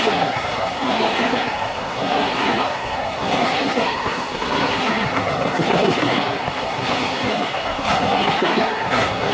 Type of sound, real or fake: fake